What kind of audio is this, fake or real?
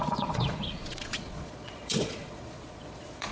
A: fake